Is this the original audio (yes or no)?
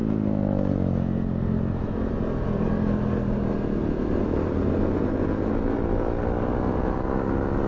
yes